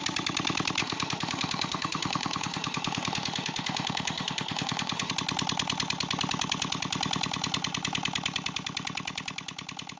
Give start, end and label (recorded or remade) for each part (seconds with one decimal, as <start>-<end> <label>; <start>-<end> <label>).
0.0-0.8 recorded; 0.8-5.1 remade; 5.1-10.0 recorded